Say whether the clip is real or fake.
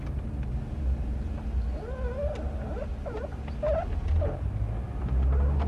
real